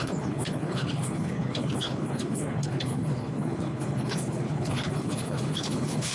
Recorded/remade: remade